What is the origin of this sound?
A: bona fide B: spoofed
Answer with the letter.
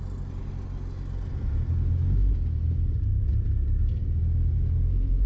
A